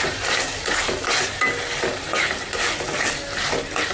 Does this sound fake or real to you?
real